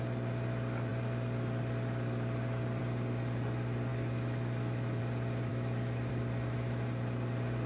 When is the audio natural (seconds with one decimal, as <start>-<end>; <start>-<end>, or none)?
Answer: 0.0-3.9; 5.0-5.5; 6.1-7.7